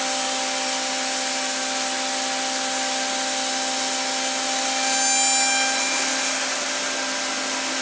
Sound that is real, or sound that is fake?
real